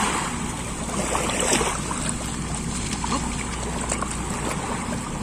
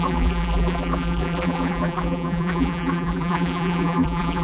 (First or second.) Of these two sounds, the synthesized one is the second